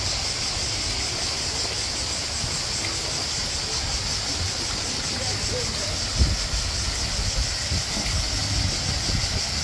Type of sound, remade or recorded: recorded